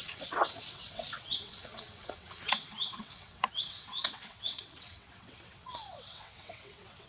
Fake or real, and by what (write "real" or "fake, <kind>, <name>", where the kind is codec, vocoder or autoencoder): fake, vocoder, WaveNeXt